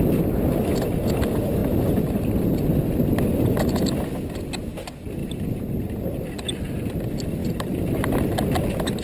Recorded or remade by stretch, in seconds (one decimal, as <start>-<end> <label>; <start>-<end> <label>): 0.0-7.4 recorded; 7.4-7.9 remade; 7.9-9.0 recorded